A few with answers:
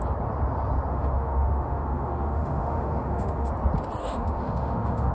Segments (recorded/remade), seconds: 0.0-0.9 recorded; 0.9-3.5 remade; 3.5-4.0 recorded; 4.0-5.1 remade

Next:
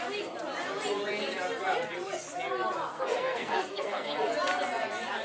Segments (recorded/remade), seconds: 0.0-2.9 recorded; 2.9-4.3 remade; 4.3-5.2 recorded

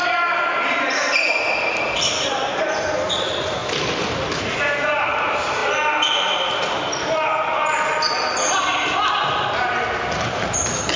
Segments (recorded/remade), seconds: 0.0-5.6 remade; 5.6-11.0 recorded

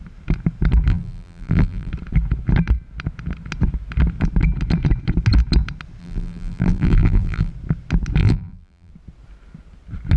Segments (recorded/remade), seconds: 0.0-0.9 recorded; 0.9-1.9 remade; 1.9-6.0 recorded; 6.0-7.5 remade; 7.5-8.2 recorded; 8.2-8.9 remade; 8.9-10.2 recorded

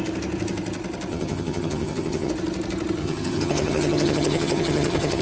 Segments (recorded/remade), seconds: 0.0-1.1 recorded; 1.1-2.3 remade; 2.3-3.0 recorded; 3.0-5.2 remade

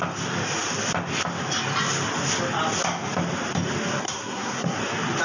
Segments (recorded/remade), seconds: 0.0-4.0 recorded; 4.0-4.8 remade; 4.8-5.2 recorded

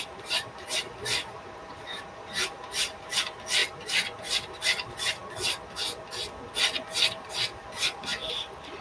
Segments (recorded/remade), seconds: 0.0-5.2 remade; 5.2-7.1 recorded; 7.1-8.8 remade

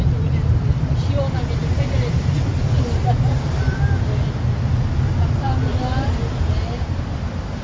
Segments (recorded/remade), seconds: 0.0-7.6 recorded